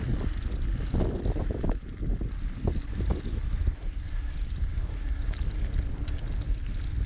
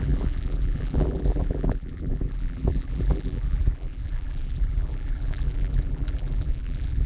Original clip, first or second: first